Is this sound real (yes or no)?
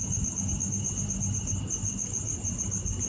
no